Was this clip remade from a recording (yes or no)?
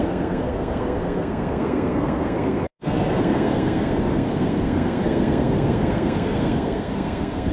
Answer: yes